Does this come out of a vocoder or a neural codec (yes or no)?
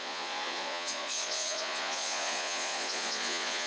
yes